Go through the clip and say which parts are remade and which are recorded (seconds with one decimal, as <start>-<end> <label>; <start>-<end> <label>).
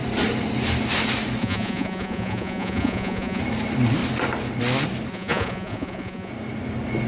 0.0-1.4 recorded; 1.4-3.4 remade; 3.4-5.1 recorded; 5.1-6.3 remade; 6.3-7.1 recorded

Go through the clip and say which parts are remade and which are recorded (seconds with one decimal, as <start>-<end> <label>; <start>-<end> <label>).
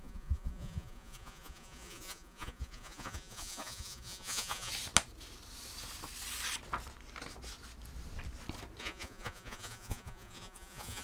0.0-4.7 remade; 4.7-8.8 recorded; 8.8-11.0 remade